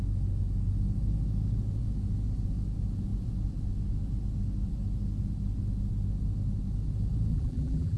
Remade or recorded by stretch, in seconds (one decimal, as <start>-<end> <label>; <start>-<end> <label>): 0.0-7.3 recorded; 7.3-8.0 remade